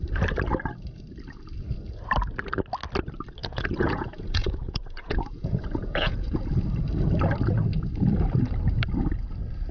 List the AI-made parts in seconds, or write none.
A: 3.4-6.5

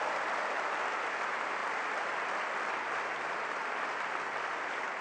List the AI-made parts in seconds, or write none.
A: none

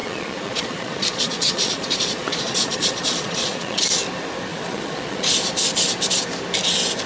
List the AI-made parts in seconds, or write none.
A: 0.0-3.8; 4.5-5.3

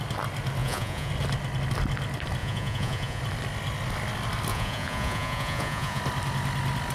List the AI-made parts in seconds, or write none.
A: 0.6-1.1; 2.4-3.2; 4.5-6.0

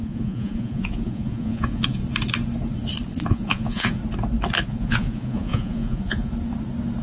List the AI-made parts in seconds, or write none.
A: 0.0-2.0; 3.3-4.0; 4.6-6.3

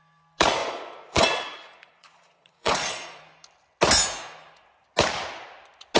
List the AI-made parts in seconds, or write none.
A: 0.6-3.2